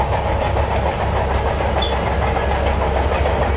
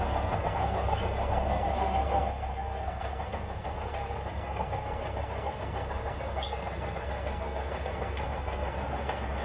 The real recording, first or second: first